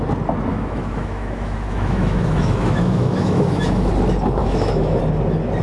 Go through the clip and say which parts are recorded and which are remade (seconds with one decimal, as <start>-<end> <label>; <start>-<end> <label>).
0.0-0.5 recorded; 0.5-3.9 remade; 3.9-4.4 recorded; 4.4-5.0 remade; 5.0-5.6 recorded